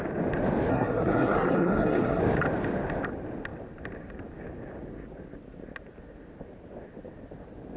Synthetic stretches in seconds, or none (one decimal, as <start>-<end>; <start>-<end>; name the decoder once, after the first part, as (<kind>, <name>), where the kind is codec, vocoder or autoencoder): 0.7-2.2 (codec, SNAC)